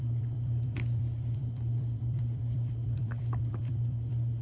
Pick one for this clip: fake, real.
fake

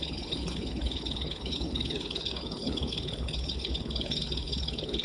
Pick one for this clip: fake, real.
fake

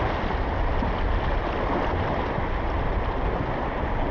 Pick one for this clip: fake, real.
real